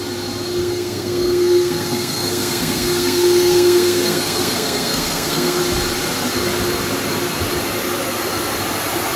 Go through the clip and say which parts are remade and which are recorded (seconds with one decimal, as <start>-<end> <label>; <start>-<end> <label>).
0.0-0.6 recorded; 0.6-5.6 remade; 5.6-9.2 recorded

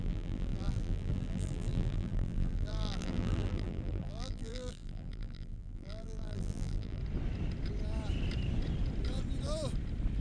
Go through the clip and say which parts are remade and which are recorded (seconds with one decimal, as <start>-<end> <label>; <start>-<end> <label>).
0.0-7.0 remade; 7.0-10.2 recorded